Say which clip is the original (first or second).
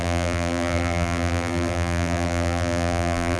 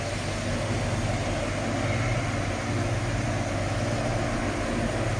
second